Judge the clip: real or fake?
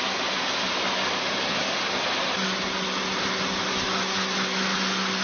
real